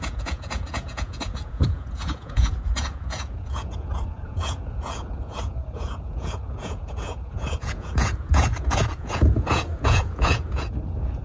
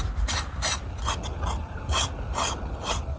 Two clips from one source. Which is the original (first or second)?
second